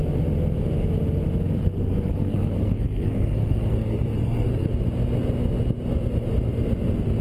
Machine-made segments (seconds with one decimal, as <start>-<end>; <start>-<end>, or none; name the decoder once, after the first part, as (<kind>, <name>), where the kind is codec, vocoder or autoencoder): 1.6-4.7 (codec, SNAC)